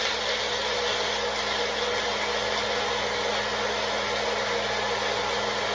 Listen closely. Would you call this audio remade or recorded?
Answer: recorded